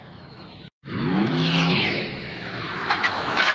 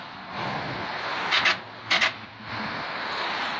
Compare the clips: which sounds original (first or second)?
second